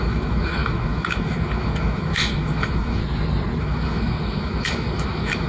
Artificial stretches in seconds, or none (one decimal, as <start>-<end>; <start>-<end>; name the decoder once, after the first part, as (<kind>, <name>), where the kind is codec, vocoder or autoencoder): 0.0-3.0 (autoencoder, DAC-VAE); 3.6-5.5